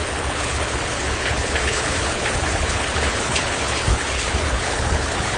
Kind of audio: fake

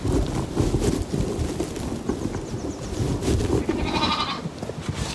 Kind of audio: real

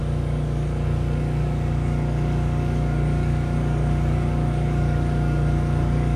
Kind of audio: fake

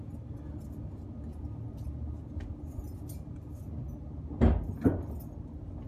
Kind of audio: real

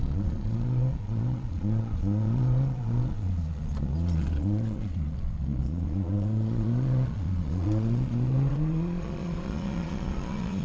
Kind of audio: fake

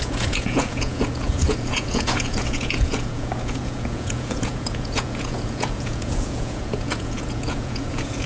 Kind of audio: fake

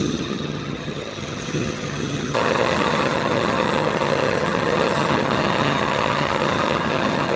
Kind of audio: fake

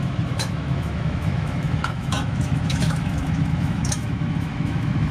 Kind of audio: fake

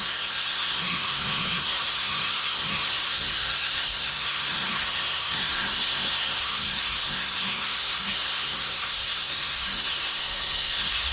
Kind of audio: fake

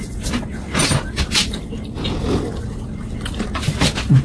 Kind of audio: fake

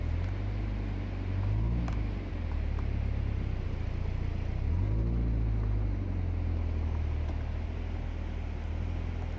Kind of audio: real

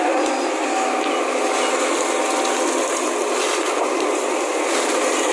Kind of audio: real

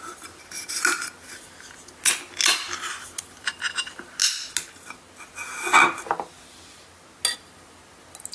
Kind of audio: real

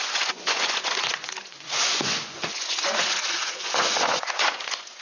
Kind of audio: fake